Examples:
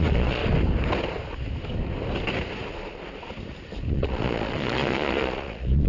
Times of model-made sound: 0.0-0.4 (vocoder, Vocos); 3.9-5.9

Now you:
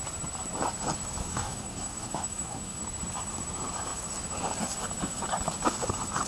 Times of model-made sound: 1.2-2.8 (codec, DAC)